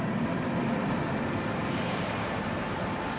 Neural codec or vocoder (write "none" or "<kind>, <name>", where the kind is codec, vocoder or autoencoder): none